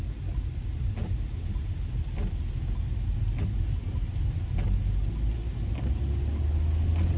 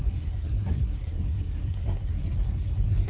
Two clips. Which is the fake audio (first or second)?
second